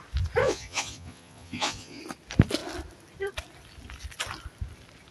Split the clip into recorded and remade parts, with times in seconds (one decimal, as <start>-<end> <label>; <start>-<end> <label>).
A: 0.0-0.4 recorded; 0.4-2.0 remade; 2.0-5.1 recorded